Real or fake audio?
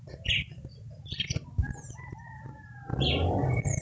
real